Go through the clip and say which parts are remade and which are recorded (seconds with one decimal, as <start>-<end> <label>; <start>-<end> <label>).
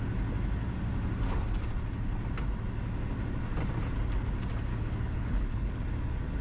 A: 0.0-4.7 recorded; 4.7-5.8 remade; 5.8-6.4 recorded